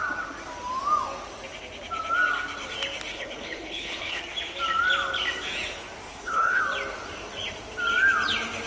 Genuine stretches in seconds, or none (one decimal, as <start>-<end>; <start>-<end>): 0.0-3.1; 4.2-6.1; 6.6-8.7